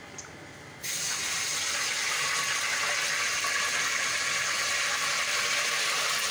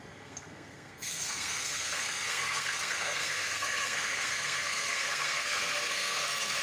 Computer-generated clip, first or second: second